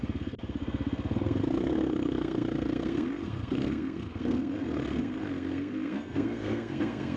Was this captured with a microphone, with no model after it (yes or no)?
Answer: no